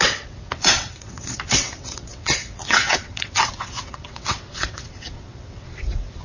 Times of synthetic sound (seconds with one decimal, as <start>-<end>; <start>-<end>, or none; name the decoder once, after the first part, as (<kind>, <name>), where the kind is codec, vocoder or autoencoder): 0.0-6.2 (vocoder, WaveNeXt)

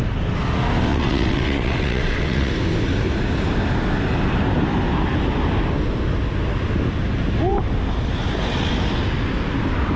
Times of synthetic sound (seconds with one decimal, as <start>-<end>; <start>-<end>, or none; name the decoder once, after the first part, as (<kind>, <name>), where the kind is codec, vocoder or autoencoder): 0.9-2.5 (vocoder, WaveNeXt)

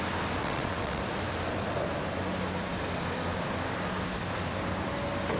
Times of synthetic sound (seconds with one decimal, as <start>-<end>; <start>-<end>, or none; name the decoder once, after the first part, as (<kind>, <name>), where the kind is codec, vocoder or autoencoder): 0.4-1.0 (vocoder, WaveNeXt)

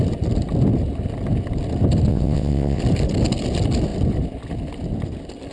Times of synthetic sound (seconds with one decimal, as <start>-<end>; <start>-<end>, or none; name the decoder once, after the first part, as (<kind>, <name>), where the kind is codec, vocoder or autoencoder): 2.1-2.8 (vocoder, WaveNeXt)

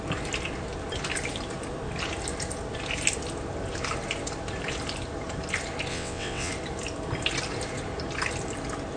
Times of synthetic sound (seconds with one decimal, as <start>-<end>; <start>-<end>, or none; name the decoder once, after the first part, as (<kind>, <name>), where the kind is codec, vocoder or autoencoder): 5.9-6.5 (vocoder, WaveNeXt)

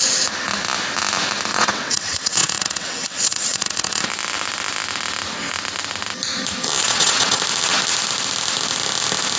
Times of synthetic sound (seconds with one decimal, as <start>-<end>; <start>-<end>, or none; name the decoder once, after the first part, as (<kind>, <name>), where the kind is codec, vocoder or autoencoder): 1.5-4.0 (vocoder, WaveNeXt); 6.8-7.4

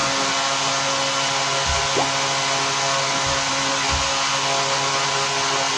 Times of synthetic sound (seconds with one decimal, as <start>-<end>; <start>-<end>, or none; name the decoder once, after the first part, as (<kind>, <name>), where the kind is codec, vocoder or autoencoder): none

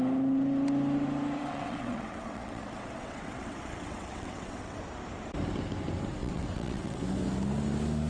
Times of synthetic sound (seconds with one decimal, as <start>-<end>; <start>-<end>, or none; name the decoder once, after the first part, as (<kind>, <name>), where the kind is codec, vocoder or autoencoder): 1.4-4.8 (vocoder, WaveNeXt); 6.2-7.0